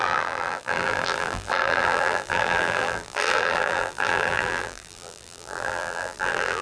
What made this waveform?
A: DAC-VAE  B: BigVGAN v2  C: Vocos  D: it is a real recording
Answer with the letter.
B